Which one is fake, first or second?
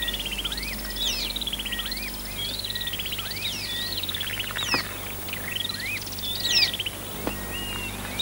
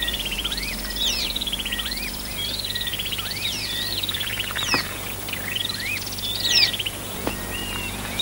second